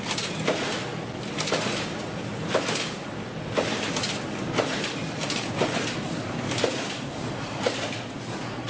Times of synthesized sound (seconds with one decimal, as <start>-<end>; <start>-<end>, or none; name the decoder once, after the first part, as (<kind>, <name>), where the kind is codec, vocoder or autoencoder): none